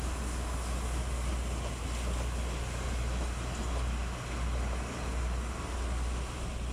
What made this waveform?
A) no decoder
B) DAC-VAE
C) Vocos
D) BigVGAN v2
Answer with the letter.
A